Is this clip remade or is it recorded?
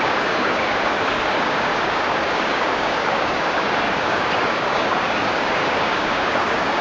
remade